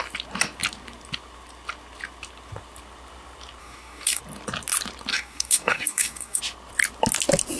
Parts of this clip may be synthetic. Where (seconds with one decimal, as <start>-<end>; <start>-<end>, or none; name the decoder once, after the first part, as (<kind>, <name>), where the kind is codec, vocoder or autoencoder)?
3.6-4.2 (codec, DAC); 5.1-6.4